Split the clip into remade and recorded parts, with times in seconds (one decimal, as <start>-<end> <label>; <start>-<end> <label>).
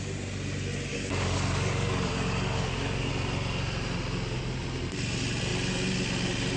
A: 0.0-0.9 recorded; 0.9-3.1 remade; 3.1-6.6 recorded